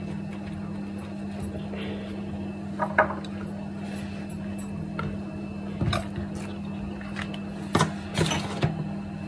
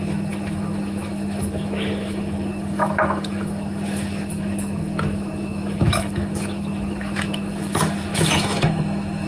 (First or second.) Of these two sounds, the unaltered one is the first